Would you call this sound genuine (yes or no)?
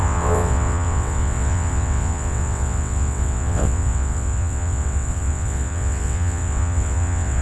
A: no